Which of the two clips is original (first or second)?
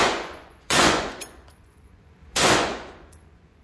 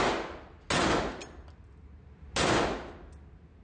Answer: second